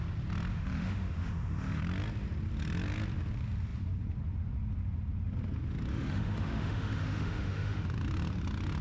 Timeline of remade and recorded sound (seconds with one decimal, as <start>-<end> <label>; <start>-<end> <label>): 0.0-0.5 recorded; 0.5-1.8 remade; 1.8-5.9 recorded; 5.9-7.8 remade; 7.8-8.8 recorded